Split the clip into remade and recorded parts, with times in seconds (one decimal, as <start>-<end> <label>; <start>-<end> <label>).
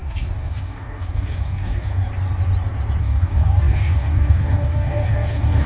0.0-2.1 remade; 2.1-3.0 recorded; 3.0-5.7 remade